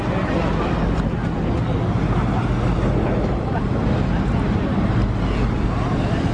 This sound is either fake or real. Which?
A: real